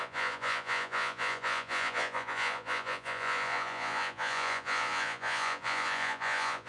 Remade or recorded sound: remade